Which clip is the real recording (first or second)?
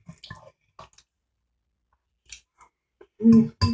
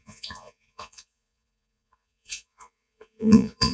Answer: first